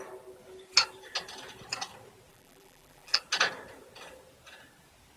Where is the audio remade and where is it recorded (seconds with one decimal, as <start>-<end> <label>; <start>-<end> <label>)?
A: 0.0-2.3 recorded; 2.3-3.2 remade; 3.2-5.2 recorded